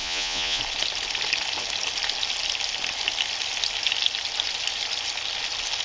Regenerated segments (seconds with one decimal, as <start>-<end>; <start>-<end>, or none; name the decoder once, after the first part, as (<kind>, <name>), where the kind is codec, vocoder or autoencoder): 0.0-0.6 (vocoder, Vocos)